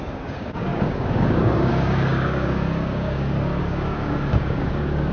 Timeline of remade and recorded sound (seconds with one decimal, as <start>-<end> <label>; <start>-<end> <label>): 0.0-5.1 remade